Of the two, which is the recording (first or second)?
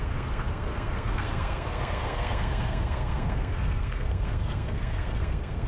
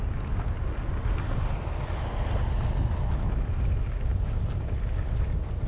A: second